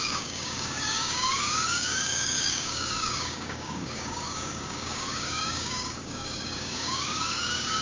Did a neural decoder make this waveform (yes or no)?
yes